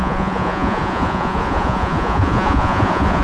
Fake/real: fake